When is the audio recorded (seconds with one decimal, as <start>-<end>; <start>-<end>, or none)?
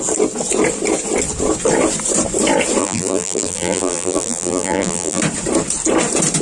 0.0-2.8; 5.2-6.4